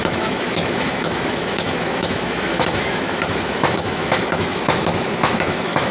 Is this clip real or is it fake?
fake